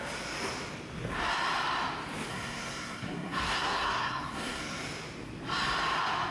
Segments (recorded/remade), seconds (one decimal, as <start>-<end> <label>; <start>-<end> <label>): 0.0-2.3 recorded; 2.3-4.8 remade; 4.8-6.3 recorded